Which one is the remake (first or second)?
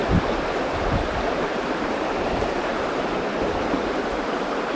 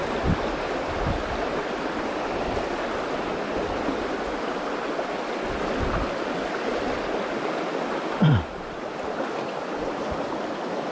first